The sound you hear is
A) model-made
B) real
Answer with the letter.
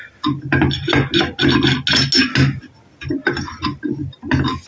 B